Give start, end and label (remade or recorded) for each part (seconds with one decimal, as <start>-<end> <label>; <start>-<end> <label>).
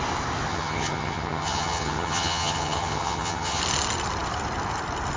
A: 0.0-0.5 recorded; 0.5-3.6 remade; 3.6-5.2 recorded